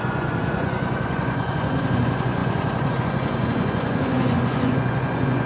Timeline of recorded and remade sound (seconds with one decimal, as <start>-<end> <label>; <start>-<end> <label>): 0.0-5.5 remade